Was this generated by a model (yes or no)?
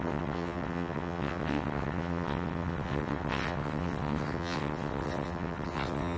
yes